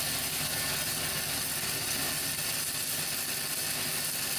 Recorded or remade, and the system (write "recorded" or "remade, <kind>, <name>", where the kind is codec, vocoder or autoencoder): recorded